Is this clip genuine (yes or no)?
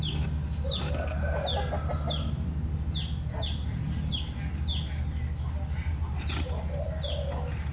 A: yes